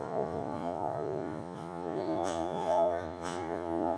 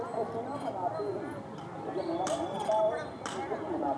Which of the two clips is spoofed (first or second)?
first